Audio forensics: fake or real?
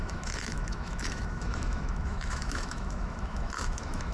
fake